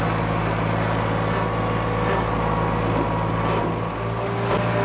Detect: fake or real real